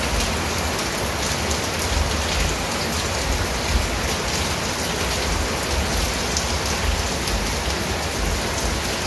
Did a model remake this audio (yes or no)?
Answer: no